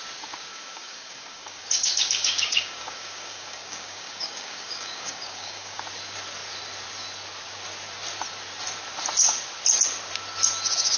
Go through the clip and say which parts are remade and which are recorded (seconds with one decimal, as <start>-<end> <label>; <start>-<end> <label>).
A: 0.0-0.5 recorded; 0.5-5.8 remade; 5.8-11.0 recorded